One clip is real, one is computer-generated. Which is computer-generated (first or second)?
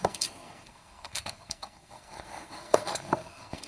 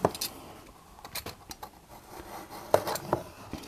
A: first